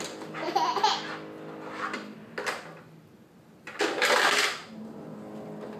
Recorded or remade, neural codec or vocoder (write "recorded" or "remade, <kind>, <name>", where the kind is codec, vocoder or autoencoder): recorded